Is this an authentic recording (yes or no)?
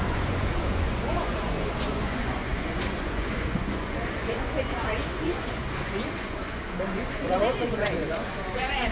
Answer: no